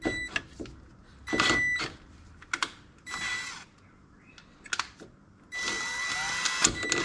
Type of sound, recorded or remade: recorded